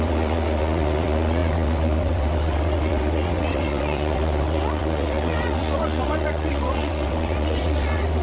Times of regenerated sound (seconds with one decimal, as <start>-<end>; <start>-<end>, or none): 0.0-8.2